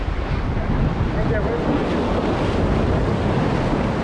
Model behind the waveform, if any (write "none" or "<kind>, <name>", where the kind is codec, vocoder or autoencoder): none